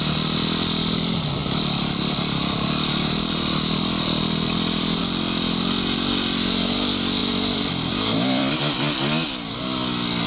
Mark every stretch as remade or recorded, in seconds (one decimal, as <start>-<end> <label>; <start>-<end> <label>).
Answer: 0.0-1.4 recorded; 1.4-5.0 remade; 5.0-7.2 recorded; 7.2-8.6 remade; 8.6-10.3 recorded